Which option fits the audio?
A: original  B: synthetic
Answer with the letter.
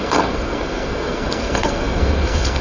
B